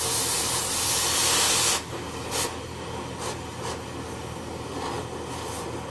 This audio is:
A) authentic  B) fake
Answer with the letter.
A